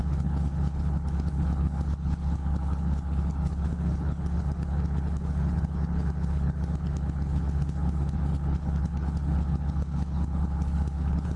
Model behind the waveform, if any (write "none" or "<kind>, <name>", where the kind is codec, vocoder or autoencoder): codec, HILCodec